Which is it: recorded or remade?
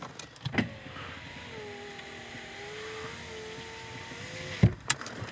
recorded